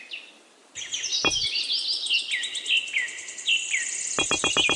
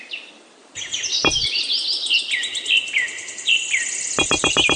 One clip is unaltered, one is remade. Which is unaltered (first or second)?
first